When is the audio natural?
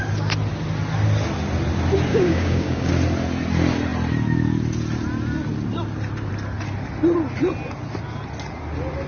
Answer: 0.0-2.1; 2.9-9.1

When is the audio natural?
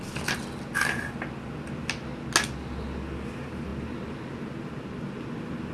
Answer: 0.0-5.7